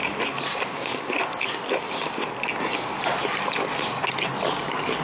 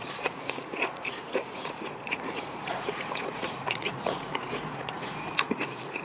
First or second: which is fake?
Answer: second